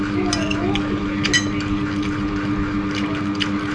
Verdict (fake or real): real